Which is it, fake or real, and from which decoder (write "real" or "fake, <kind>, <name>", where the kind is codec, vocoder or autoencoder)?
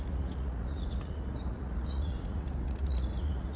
fake, vocoder, Vocos